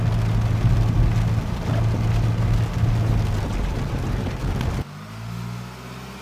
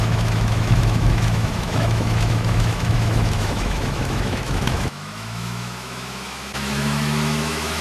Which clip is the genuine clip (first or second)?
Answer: first